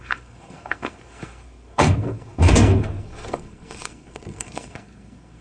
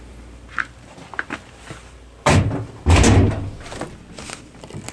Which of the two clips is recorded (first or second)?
second